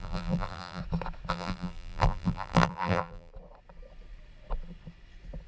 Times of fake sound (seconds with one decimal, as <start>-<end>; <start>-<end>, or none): 0.0-0.8; 1.3-3.3